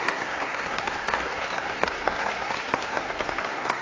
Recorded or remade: remade